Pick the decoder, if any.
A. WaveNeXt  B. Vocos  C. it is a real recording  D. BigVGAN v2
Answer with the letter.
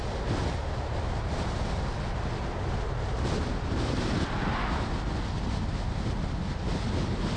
C